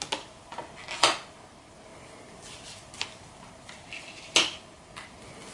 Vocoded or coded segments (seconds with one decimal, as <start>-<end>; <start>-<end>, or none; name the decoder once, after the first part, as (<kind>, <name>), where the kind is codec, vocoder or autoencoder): none